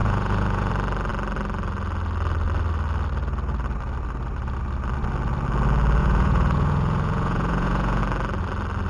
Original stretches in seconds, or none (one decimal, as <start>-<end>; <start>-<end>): 0.7-6.0; 8.0-8.9